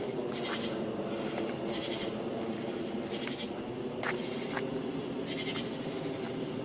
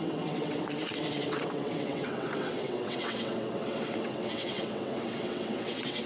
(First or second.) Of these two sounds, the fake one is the second